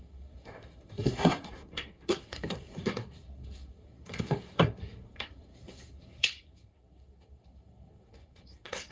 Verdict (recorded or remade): remade